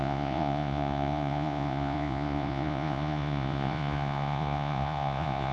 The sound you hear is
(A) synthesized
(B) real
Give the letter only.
A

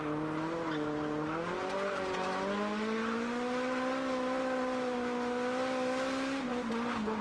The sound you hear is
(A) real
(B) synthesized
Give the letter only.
A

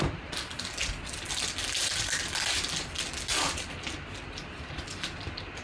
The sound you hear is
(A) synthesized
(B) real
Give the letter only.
B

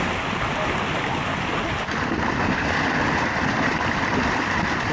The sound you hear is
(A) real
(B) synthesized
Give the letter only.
A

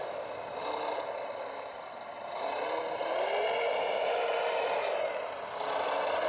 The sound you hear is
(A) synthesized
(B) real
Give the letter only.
B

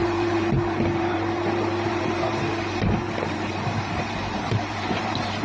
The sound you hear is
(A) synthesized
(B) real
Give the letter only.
A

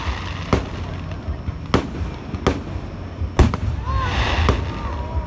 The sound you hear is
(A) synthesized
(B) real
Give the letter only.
B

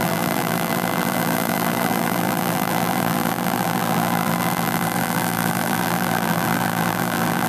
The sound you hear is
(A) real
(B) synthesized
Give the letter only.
B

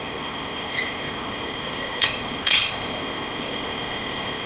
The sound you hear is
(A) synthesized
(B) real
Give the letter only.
A